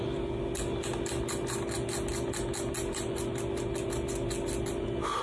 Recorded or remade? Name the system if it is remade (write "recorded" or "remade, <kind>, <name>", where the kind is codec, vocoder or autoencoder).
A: recorded